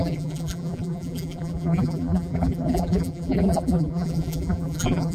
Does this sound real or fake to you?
fake